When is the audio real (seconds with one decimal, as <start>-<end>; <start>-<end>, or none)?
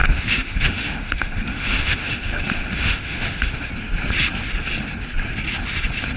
3.7-6.2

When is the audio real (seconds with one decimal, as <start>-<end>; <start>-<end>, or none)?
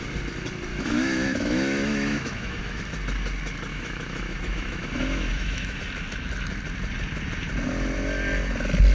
0.0-0.7; 2.8-3.7; 5.8-8.9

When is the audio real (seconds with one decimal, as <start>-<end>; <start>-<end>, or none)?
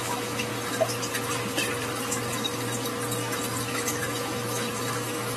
0.5-3.7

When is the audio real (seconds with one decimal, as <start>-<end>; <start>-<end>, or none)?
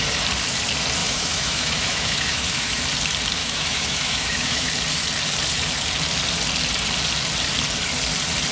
0.0-1.0; 2.8-3.4; 4.7-8.5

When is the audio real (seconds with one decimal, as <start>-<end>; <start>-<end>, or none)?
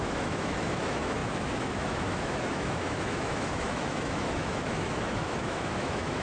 none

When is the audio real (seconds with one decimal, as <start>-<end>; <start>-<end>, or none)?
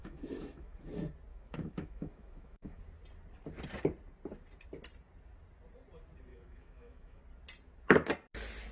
0.9-1.3; 2.8-6.3; 7.2-8.7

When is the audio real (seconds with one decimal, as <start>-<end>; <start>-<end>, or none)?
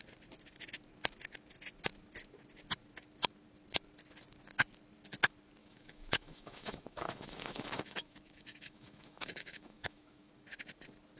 0.0-5.6; 10.3-11.2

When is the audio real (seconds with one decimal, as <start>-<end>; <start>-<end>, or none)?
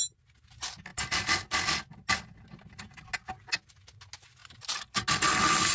0.0-5.7